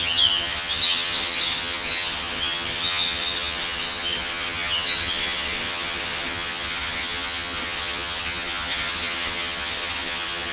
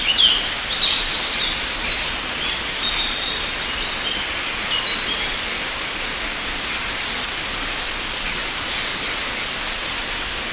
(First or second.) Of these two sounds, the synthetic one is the first